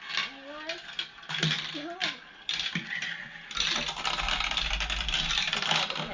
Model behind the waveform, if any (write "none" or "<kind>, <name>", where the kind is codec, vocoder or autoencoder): none